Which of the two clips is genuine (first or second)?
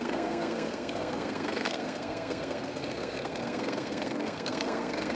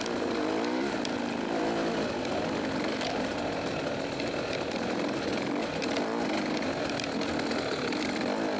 second